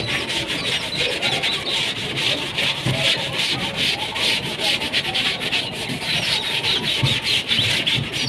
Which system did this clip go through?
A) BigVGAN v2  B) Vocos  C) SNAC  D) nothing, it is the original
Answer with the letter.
D